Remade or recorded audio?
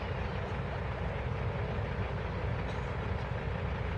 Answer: recorded